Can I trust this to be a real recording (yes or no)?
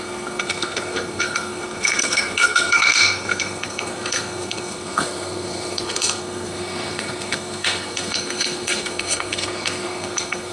no